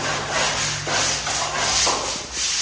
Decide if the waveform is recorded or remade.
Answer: recorded